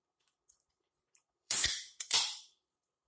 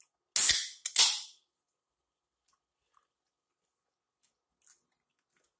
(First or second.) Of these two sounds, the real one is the second